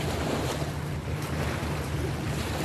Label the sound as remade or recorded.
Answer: recorded